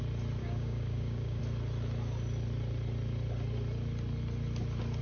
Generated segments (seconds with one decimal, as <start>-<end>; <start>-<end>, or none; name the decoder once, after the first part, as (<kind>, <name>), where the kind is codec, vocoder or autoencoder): 0.4-1.4 (codec, DAC)